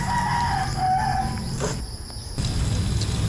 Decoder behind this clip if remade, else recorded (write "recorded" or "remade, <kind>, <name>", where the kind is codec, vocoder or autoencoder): recorded